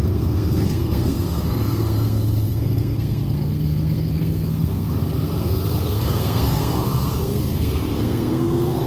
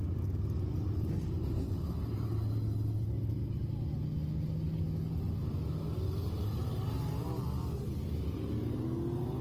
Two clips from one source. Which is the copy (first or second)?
first